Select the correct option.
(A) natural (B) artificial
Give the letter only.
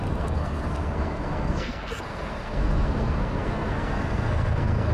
B